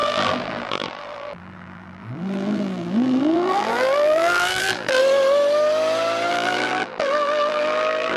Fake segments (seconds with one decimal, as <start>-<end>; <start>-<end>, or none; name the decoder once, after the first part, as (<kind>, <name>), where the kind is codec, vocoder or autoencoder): 0.0-5.0 (vocoder, BigVGAN v2); 6.3-8.2

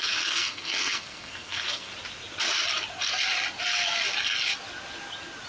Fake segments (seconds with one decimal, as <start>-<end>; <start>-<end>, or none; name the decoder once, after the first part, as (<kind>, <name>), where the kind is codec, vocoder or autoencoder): 0.0-1.9 (codec, SNAC)